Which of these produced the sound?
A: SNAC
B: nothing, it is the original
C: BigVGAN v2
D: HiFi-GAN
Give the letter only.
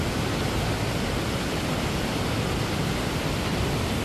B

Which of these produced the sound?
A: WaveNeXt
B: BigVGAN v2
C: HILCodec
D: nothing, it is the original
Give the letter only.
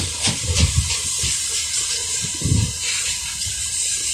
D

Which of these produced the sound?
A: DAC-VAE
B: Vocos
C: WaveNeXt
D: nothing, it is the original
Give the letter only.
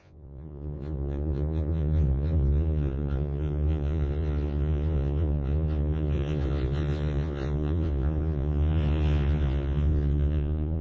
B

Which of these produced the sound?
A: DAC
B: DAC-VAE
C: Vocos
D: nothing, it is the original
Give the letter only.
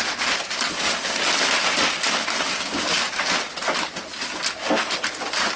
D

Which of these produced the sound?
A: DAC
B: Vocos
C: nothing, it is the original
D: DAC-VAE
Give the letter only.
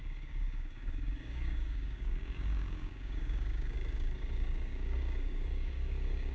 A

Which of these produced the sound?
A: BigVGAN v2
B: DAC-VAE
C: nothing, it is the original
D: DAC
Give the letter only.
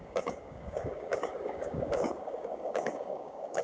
D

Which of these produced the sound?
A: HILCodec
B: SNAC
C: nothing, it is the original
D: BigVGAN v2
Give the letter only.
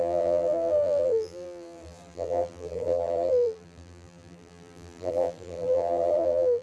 D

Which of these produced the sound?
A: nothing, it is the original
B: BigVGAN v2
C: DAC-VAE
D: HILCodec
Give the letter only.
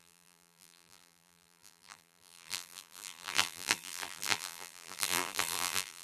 B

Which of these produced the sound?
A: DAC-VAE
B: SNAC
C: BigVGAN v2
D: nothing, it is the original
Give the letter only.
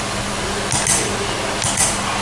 D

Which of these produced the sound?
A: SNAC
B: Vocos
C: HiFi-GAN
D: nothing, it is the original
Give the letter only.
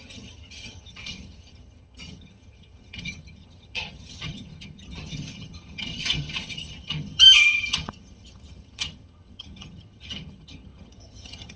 C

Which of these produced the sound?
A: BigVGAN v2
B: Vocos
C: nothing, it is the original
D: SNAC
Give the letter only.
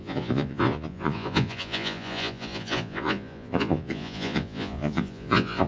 B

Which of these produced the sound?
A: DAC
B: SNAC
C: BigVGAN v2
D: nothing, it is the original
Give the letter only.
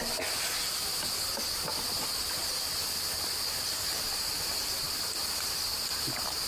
D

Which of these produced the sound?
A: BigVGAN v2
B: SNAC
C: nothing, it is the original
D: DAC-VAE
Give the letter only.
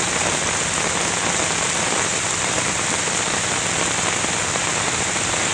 C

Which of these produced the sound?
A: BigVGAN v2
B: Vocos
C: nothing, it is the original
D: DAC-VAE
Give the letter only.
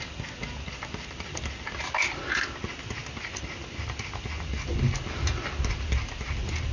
C